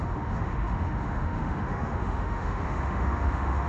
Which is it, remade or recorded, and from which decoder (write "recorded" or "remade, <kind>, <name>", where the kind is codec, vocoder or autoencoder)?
remade, autoencoder, DAC-VAE